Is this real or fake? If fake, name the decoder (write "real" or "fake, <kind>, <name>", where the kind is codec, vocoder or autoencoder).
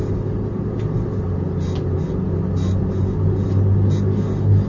real